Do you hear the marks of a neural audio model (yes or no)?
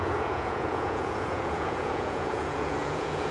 yes